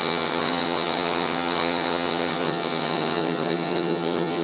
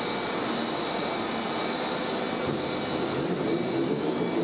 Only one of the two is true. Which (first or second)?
second